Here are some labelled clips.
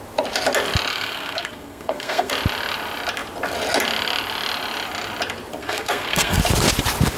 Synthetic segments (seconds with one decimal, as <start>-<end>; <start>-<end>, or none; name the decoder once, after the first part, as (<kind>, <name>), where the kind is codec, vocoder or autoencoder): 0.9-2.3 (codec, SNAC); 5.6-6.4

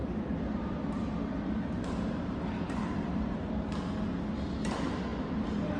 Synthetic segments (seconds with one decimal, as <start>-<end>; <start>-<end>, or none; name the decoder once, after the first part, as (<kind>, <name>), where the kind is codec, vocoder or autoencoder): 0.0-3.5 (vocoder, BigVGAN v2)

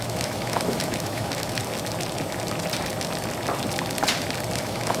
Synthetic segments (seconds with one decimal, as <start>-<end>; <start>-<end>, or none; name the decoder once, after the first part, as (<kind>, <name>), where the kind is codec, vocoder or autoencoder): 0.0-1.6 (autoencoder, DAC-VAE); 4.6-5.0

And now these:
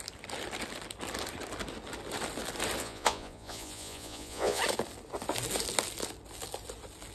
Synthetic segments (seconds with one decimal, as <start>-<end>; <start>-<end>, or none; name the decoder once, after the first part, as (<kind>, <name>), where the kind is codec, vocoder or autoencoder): 2.8-4.6 (vocoder, Vocos)

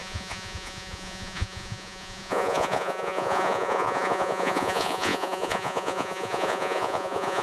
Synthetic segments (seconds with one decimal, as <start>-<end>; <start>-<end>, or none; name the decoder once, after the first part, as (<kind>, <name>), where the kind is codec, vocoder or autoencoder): 0.0-7.4 (vocoder, Vocos)